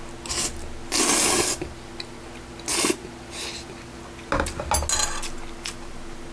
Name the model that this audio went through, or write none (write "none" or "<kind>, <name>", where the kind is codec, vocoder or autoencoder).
none